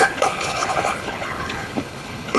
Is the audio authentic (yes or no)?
no